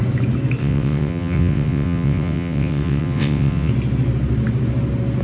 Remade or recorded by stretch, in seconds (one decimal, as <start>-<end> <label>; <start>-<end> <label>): 0.0-0.6 recorded; 0.6-3.7 remade; 3.7-5.2 recorded